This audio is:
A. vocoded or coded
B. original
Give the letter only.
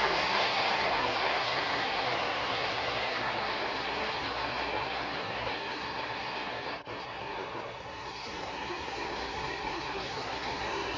A